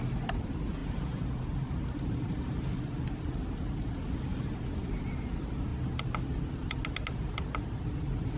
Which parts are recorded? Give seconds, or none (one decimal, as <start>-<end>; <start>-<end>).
0.0-0.8; 2.8-4.3; 5.0-8.4